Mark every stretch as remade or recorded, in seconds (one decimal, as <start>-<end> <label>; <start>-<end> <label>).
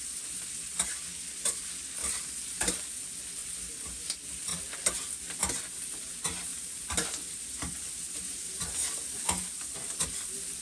0.0-2.0 recorded; 2.0-2.7 remade; 2.7-3.4 recorded; 3.4-4.0 remade; 4.0-6.5 recorded; 6.5-8.9 remade; 8.9-10.6 recorded